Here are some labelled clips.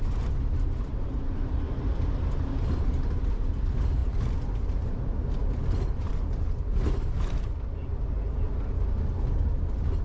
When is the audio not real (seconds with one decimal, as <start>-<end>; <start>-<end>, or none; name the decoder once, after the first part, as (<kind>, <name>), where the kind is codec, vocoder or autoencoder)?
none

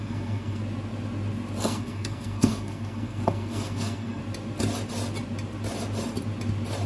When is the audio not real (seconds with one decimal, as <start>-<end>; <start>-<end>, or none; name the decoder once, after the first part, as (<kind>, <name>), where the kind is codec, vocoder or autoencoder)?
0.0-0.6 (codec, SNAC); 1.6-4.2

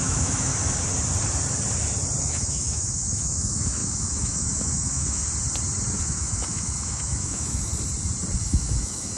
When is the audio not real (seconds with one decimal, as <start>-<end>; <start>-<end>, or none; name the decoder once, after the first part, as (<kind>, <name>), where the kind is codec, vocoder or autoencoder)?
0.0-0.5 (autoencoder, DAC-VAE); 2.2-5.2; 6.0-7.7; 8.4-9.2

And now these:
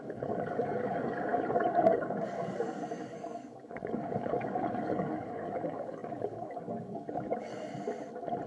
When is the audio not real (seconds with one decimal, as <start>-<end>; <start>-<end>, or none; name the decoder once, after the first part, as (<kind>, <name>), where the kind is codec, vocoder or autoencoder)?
0.0-7.5 (codec, DAC)

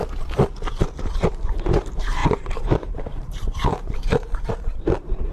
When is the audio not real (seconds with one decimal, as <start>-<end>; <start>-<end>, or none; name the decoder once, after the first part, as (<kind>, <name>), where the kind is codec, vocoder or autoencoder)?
1.3-5.3 (vocoder, BigVGAN v2)